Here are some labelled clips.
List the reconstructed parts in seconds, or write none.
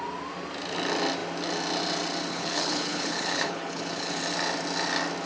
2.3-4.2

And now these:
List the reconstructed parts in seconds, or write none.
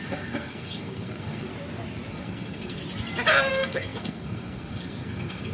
0.0-1.5; 2.1-2.8; 3.5-5.5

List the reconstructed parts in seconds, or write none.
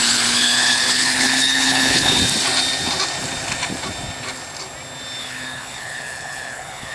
0.0-2.2; 5.2-6.9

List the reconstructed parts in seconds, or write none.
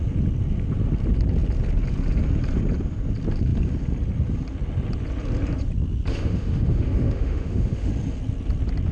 6.1-7.9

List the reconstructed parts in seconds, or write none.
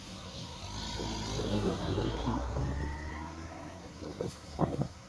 0.0-0.6; 1.5-2.6; 3.1-5.1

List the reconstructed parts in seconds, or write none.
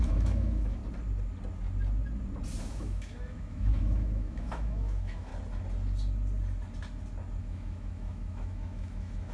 0.0-0.8; 2.6-5.3; 7.4-9.3